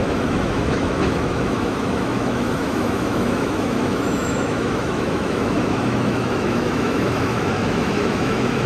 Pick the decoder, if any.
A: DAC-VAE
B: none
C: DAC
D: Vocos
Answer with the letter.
A